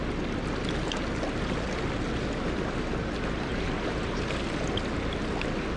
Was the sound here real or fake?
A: real